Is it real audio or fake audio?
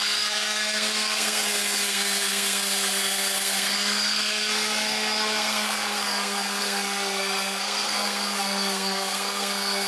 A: fake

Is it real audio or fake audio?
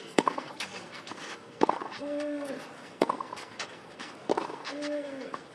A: fake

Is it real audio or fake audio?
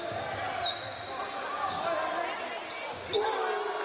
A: real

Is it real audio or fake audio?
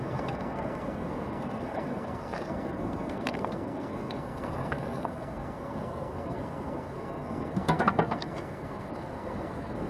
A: fake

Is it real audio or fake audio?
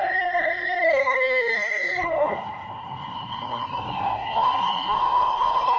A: fake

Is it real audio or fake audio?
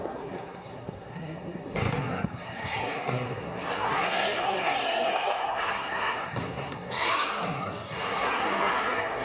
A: fake